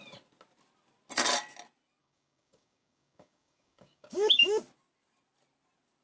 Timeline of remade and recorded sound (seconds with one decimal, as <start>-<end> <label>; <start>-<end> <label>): 0.0-2.0 recorded; 2.0-4.6 remade; 4.6-6.0 recorded